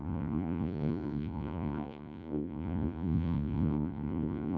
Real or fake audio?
fake